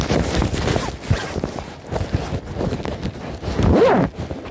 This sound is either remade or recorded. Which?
recorded